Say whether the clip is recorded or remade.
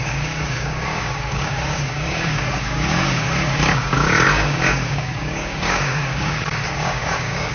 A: remade